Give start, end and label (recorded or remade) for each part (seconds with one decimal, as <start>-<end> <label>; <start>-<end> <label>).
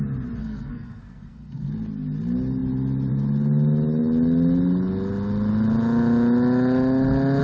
0.0-0.4 recorded; 0.4-1.7 remade; 1.7-7.4 recorded